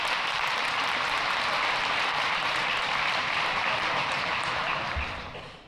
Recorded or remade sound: remade